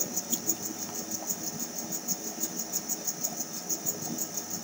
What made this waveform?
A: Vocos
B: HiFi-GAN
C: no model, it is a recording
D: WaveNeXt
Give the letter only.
C